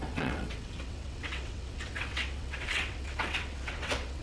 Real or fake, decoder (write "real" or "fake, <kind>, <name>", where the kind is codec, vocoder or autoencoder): fake, vocoder, WaveNeXt